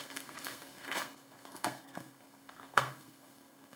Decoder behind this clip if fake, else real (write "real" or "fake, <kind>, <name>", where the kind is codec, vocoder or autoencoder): fake, codec, SNAC